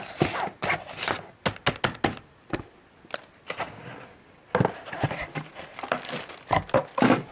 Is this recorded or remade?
recorded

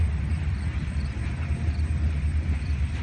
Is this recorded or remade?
remade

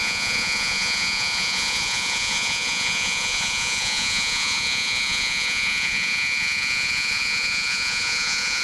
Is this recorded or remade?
remade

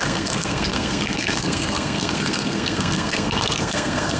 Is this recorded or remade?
remade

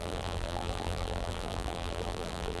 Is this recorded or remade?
remade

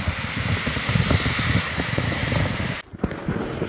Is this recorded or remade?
recorded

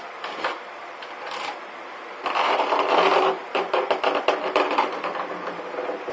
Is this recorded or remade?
remade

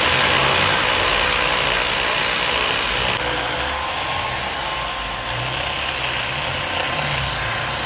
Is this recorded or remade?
recorded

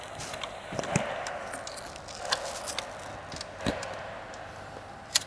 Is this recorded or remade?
recorded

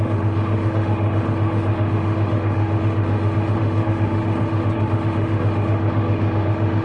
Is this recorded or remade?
remade